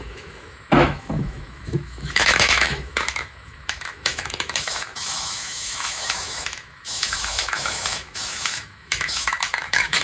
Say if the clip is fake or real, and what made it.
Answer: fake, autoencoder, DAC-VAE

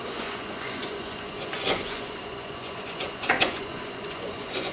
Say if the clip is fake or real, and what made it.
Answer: fake, vocoder, Vocos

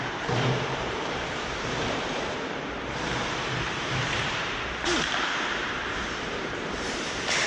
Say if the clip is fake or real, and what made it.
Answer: fake, vocoder, BigVGAN v2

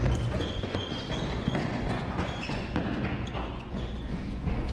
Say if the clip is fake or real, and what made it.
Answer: fake, vocoder, Vocos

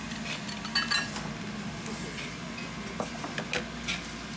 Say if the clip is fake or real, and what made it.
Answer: real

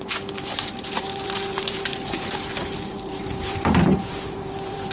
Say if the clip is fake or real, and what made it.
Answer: fake, vocoder, BigVGAN v2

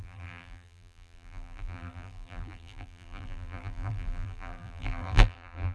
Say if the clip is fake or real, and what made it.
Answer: fake, vocoder, BigVGAN v2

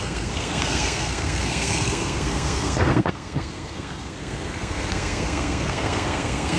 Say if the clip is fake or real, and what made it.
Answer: fake, codec, SNAC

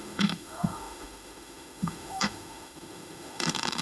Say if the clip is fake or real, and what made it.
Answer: fake, autoencoder, DAC-VAE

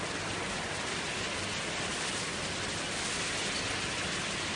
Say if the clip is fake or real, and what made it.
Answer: real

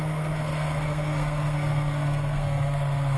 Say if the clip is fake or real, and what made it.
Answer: fake, codec, SNAC